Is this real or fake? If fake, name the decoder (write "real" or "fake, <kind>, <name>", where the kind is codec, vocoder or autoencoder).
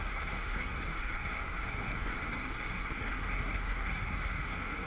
fake, codec, SNAC